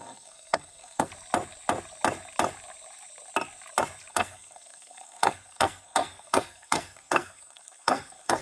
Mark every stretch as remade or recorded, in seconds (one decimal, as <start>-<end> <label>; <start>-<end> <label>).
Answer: 0.0-1.1 remade; 1.1-4.1 recorded; 4.1-8.4 remade